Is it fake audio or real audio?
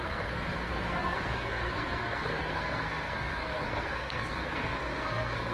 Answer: fake